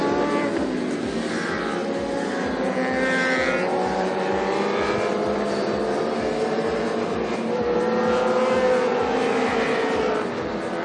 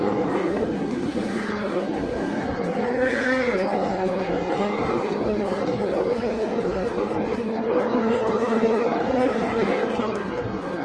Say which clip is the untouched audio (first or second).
first